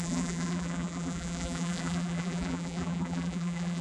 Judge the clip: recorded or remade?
remade